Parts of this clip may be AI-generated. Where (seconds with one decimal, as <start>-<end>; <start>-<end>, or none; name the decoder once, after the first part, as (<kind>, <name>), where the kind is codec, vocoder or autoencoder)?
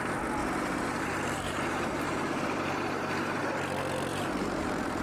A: 0.4-3.4 (vocoder, BigVGAN v2); 4.1-5.0